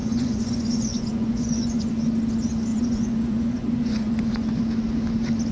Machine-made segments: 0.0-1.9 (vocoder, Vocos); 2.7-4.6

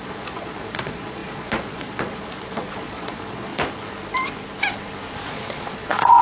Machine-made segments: 0.0-3.5 (vocoder, Vocos); 5.3-6.2

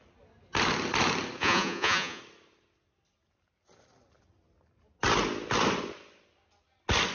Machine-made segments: 1.4-2.2 (vocoder, Vocos)

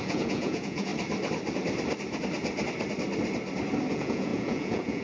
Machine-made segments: 0.0-0.9 (vocoder, Vocos); 3.9-5.0

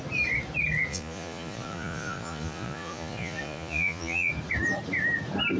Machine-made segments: 0.9-4.3 (vocoder, Vocos)